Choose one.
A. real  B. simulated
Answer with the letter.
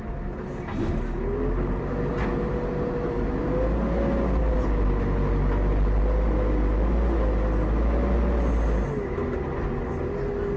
A